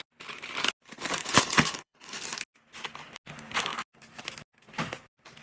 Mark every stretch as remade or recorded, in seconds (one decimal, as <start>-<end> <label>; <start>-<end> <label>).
0.0-1.2 recorded; 1.2-2.2 remade; 2.2-5.4 recorded